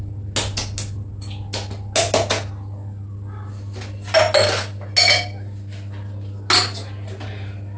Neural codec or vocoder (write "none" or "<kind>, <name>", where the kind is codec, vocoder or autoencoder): none